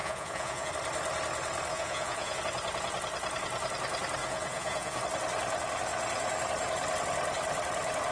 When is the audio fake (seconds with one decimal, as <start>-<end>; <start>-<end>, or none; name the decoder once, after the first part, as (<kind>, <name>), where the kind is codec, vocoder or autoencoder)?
0.0-0.7 (vocoder, Vocos); 1.7-2.4; 4.2-5.0